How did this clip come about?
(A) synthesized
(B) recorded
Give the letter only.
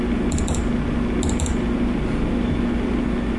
B